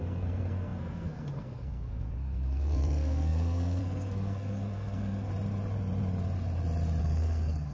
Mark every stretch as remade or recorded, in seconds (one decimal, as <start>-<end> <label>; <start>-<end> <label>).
0.0-5.3 remade; 5.3-7.0 recorded; 7.0-7.7 remade